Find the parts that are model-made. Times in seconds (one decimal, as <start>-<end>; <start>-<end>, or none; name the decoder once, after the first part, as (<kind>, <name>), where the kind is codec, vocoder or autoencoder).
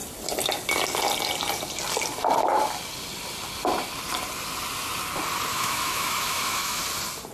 5.5-6.8 (autoencoder, DAC-VAE)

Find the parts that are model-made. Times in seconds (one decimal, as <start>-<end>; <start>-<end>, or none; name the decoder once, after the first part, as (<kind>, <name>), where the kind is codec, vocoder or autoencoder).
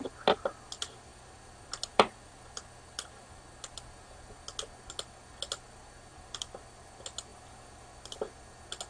1.1-3.8 (vocoder, BigVGAN v2); 6.1-6.6; 7.3-7.8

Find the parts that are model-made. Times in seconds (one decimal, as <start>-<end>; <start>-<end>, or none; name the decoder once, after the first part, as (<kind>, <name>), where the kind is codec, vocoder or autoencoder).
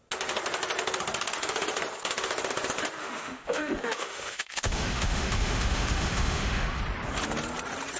3.0-6.8 (autoencoder, DAC-VAE)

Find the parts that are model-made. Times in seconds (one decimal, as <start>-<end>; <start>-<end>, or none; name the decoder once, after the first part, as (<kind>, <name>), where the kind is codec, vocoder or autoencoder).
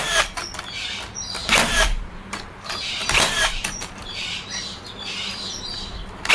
1.4-4.8 (vocoder, BigVGAN v2)